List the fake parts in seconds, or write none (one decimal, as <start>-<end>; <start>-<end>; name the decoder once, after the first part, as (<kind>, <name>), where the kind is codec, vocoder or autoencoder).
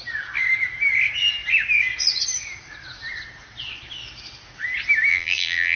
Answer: 5.1-5.8 (vocoder, BigVGAN v2)